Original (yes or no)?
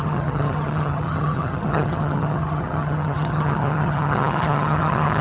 no